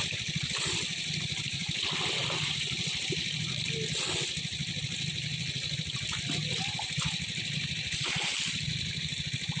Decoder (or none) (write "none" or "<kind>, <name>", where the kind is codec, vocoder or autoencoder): none